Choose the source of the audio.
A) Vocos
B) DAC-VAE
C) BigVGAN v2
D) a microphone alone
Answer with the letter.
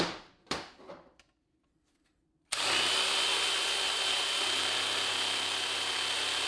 C